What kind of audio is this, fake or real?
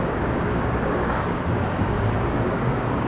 fake